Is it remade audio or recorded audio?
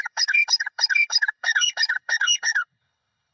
remade